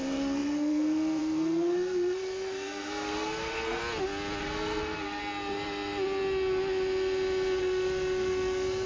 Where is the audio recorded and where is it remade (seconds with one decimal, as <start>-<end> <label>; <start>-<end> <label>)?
0.0-3.8 remade; 3.8-4.4 recorded; 4.4-5.2 remade; 5.2-7.6 recorded; 7.6-8.9 remade